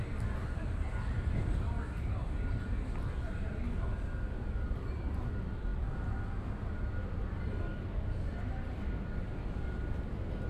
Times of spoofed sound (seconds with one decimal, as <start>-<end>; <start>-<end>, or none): none